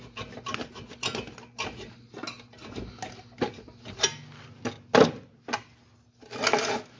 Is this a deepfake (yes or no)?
no